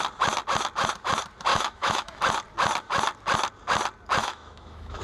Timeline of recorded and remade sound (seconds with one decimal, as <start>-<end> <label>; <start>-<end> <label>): 0.0-1.5 recorded; 1.5-2.2 remade; 2.2-4.2 recorded; 4.2-5.0 remade